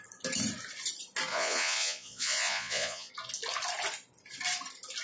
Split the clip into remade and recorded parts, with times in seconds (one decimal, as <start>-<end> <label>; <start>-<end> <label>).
0.0-1.3 recorded; 1.3-3.1 remade; 3.1-5.0 recorded